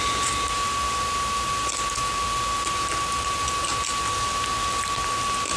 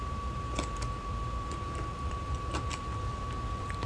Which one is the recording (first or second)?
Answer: first